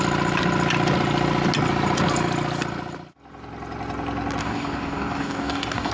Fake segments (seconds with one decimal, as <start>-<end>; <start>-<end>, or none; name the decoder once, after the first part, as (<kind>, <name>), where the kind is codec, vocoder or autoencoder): 4.4-5.9 (codec, DAC)